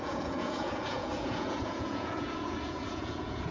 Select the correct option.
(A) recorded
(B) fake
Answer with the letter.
B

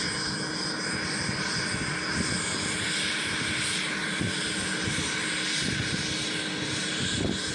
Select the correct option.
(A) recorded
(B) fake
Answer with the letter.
A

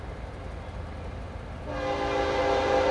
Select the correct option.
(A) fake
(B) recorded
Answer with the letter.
B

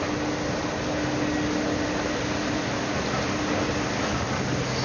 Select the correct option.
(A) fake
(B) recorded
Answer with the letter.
B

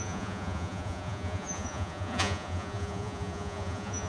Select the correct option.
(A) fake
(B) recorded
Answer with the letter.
A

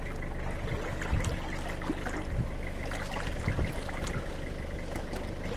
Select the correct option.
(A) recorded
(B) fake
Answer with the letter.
A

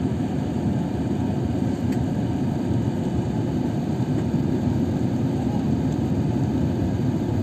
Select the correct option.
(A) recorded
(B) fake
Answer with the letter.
B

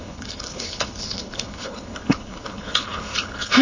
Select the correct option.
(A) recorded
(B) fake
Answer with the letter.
B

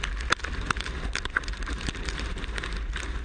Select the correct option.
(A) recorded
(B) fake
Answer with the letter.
A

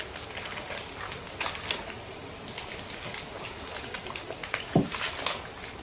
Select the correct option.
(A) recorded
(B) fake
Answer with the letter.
A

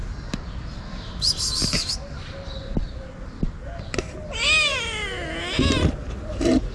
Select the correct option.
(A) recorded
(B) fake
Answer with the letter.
A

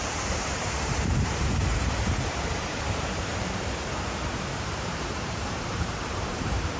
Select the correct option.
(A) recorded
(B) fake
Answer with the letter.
B